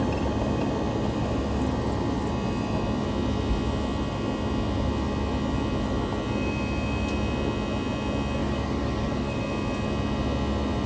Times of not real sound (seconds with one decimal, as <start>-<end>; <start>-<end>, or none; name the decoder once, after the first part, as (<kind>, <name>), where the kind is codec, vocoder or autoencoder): 8.4-9.4 (codec, DAC)